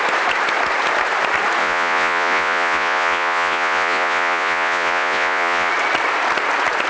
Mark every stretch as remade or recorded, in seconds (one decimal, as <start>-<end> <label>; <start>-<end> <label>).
0.0-1.6 recorded; 1.6-5.7 remade; 5.7-6.9 recorded